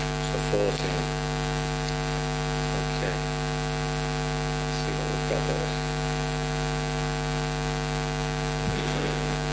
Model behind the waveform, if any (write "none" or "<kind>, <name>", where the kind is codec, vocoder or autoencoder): none